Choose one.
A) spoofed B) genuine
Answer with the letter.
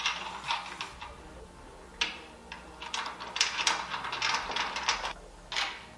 B